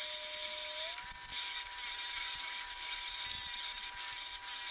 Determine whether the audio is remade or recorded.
recorded